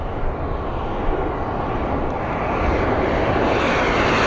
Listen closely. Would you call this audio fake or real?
real